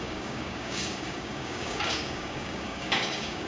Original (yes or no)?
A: no